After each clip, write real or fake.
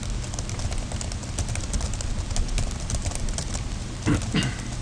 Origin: real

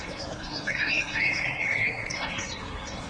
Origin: fake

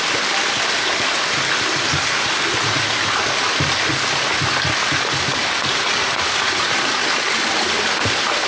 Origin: real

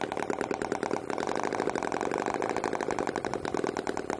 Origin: real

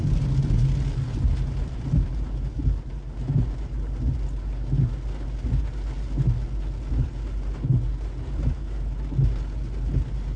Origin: real